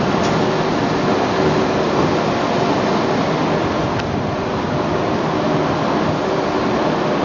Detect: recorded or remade recorded